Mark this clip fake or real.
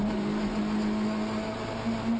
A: real